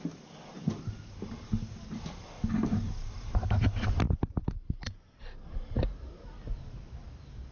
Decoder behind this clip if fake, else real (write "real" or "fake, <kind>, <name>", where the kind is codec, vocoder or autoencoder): real